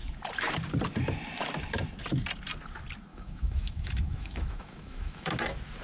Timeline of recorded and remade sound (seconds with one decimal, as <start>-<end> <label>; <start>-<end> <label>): 0.0-3.1 recorded; 3.1-5.3 remade; 5.3-5.8 recorded